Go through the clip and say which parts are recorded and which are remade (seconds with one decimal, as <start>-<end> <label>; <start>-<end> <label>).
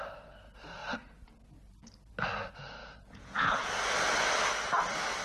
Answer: 0.0-2.8 recorded; 2.8-3.7 remade; 3.7-5.2 recorded